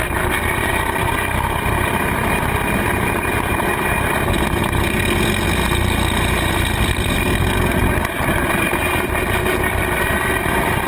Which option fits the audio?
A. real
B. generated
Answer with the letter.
A